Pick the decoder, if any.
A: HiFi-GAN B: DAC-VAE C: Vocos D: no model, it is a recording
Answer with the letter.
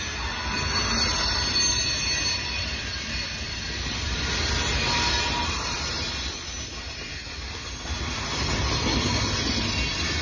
D